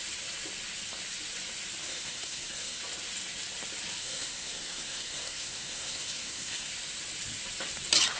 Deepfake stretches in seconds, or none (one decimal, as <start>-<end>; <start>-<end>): 1.8-2.8; 4.0-6.7